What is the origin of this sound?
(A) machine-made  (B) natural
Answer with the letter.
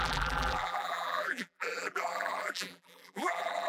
A